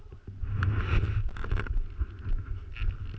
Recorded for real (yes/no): yes